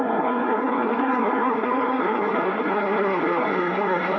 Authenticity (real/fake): fake